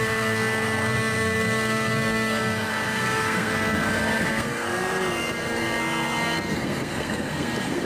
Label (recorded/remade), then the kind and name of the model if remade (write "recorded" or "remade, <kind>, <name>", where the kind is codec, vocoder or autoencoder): remade, codec, SNAC